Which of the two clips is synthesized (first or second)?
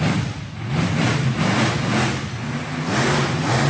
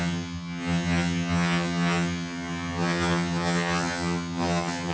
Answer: second